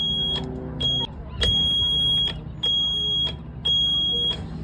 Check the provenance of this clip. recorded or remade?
recorded